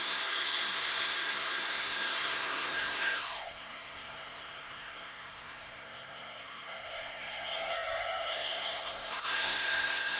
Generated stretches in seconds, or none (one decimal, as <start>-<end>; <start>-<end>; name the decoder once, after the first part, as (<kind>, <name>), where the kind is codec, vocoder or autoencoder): 0.0-10.2 (codec, SNAC)